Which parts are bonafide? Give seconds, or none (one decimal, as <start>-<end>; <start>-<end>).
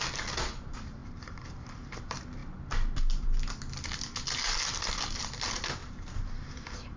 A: 0.0-1.0; 2.0-5.8